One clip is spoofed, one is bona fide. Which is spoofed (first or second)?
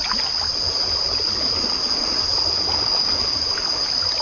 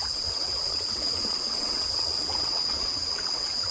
second